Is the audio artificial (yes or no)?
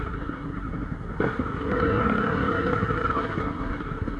yes